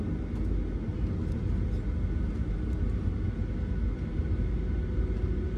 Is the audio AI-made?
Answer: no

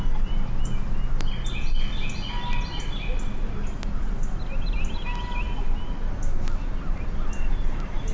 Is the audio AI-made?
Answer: no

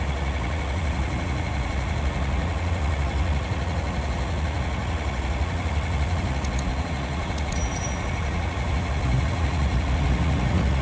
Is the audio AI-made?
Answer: yes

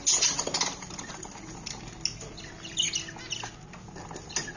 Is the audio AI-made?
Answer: no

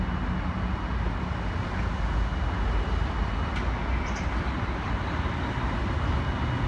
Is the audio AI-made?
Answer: no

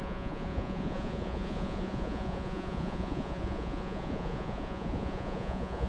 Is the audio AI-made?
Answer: yes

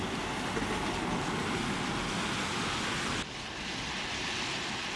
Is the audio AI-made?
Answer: no